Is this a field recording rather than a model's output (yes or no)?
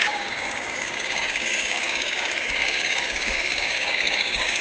no